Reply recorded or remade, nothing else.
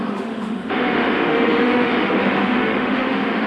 remade